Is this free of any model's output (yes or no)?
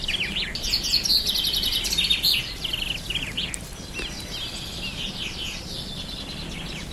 yes